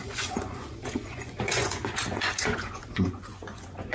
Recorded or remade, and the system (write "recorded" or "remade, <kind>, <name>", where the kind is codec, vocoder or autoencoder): remade, vocoder, Vocos